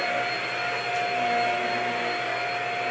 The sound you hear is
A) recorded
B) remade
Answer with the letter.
A